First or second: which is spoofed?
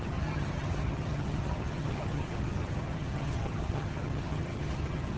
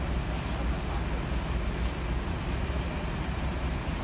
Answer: first